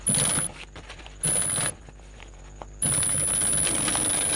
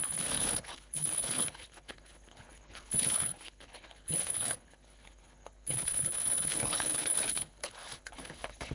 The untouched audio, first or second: first